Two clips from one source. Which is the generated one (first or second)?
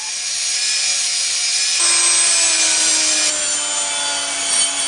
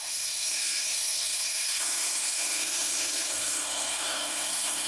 second